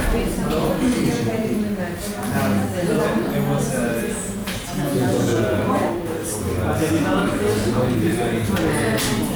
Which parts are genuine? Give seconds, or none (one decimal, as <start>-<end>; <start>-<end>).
0.0-4.4; 5.6-9.4